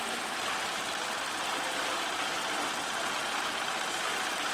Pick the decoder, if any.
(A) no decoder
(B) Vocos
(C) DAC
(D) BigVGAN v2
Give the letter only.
D